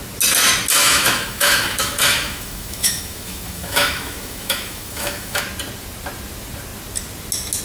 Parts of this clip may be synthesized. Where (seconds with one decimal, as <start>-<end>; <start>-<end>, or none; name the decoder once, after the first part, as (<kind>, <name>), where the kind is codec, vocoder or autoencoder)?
0.8-5.4 (autoencoder, DAC-VAE)